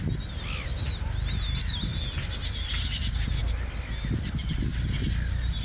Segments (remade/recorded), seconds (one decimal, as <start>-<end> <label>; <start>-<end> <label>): 0.0-5.6 recorded